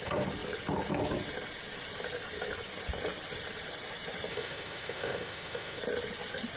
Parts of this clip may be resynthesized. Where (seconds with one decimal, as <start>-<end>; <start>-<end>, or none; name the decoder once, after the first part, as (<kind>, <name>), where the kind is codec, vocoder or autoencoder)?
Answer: 4.3-5.8 (autoencoder, DAC-VAE)